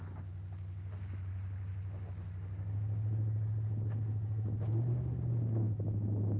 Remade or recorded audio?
recorded